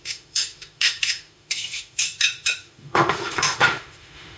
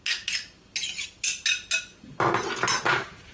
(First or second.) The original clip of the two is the second